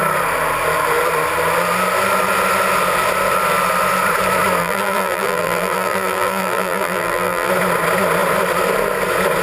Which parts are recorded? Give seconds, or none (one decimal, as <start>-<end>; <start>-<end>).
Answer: 0.0-4.6; 7.5-9.4